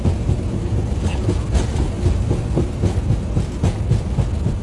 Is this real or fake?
real